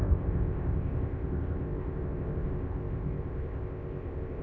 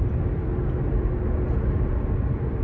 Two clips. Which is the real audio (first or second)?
second